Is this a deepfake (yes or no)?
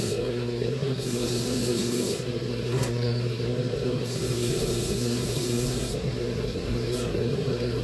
yes